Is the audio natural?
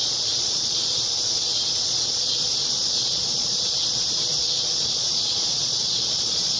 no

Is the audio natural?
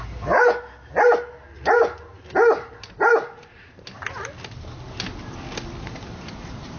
yes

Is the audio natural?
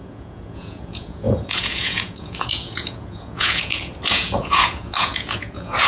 no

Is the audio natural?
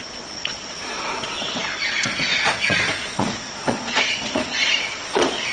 no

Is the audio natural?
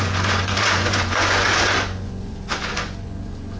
no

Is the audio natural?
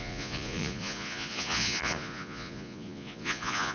no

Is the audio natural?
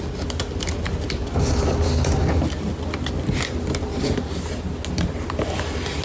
yes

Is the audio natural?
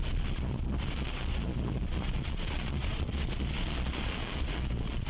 no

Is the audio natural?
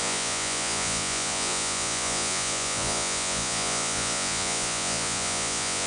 no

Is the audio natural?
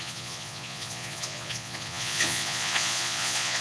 no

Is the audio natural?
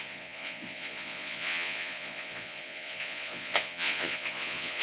no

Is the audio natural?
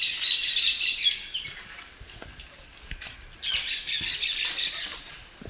yes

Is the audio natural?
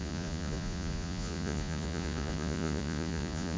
no